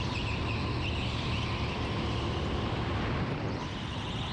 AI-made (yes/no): no